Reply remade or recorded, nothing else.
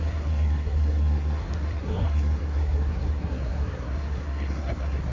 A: remade